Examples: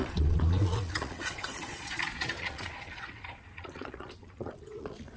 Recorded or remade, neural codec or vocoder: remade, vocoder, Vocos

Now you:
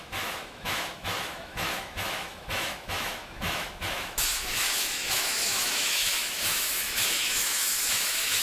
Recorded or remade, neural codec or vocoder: remade, autoencoder, DAC-VAE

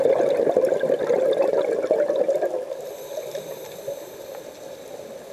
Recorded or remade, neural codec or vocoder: recorded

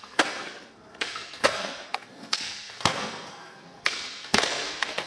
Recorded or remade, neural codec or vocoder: remade, codec, SNAC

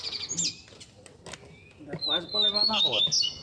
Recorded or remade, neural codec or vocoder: recorded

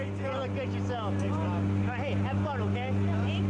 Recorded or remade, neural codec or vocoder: recorded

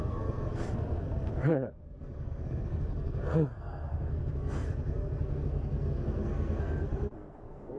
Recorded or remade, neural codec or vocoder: remade, codec, SNAC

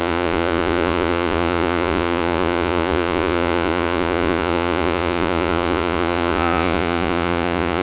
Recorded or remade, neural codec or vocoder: remade, vocoder, Vocos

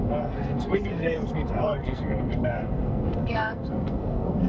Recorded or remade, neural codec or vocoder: remade, codec, SNAC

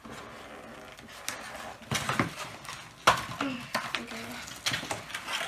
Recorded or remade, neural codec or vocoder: recorded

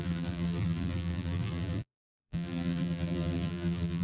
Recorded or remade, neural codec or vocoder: remade, vocoder, BigVGAN v2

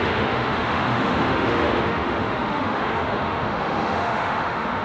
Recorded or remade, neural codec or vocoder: remade, autoencoder, DAC-VAE